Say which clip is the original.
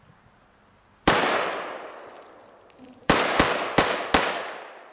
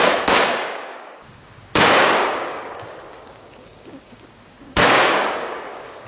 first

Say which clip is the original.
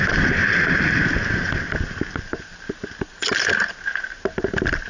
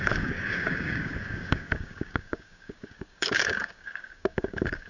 first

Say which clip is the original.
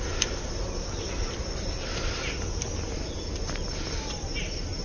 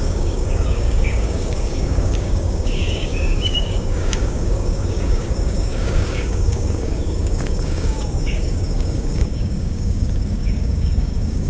first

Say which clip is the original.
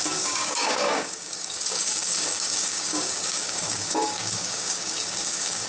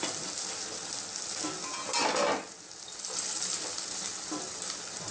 second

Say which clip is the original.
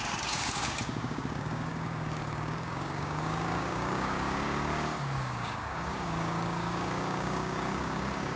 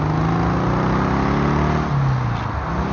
second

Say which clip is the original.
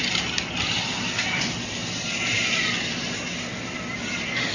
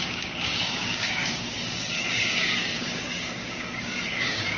first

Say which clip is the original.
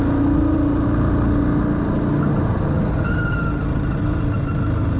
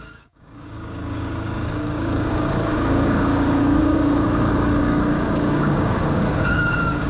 first